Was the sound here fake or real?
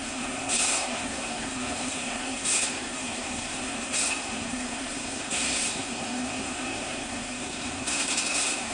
fake